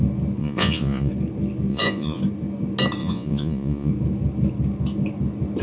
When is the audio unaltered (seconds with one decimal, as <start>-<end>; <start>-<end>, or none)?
0.0-0.4; 1.1-1.7; 2.2-3.0; 3.9-5.6